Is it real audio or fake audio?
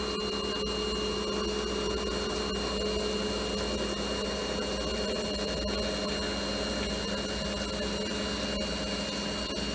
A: real